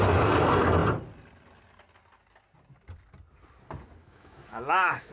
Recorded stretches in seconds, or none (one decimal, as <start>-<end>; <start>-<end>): 0.0-4.0